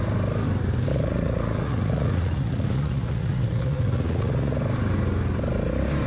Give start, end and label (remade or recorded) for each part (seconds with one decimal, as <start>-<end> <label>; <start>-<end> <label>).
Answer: 0.0-0.9 recorded; 0.9-4.6 remade; 4.6-6.1 recorded